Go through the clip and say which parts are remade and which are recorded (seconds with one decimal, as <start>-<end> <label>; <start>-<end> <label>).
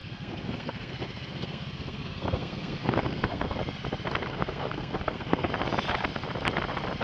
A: 0.0-3.6 remade; 3.6-4.2 recorded; 4.2-5.5 remade; 5.5-7.0 recorded